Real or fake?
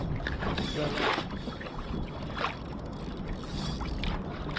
real